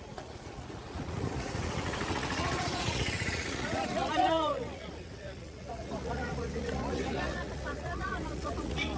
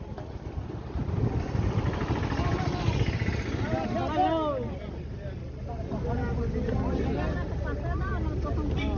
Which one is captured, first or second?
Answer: second